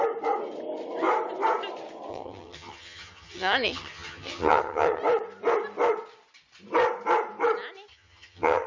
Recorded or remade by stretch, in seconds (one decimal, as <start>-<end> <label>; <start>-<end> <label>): 0.0-2.1 recorded; 2.1-5.0 remade; 5.0-7.9 recorded; 7.9-8.7 remade